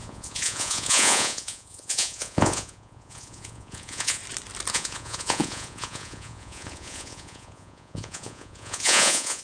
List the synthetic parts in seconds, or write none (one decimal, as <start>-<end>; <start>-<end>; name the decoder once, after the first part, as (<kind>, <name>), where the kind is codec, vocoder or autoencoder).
0.0-4.2 (vocoder, Vocos); 4.7-9.4